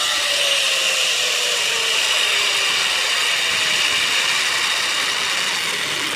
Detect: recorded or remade recorded